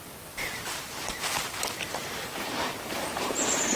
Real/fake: fake